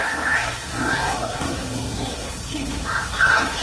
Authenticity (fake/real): fake